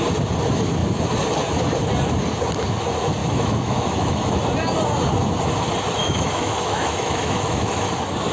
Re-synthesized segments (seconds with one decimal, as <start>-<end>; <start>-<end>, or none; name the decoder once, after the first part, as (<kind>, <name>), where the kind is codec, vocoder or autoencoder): 3.2-4.4 (autoencoder, DAC-VAE); 6.0-7.9